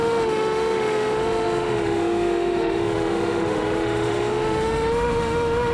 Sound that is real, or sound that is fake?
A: fake